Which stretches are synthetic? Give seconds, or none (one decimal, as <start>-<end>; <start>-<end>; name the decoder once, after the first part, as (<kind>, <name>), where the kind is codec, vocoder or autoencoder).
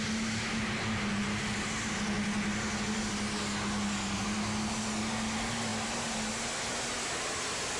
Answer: none